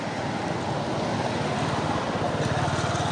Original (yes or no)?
yes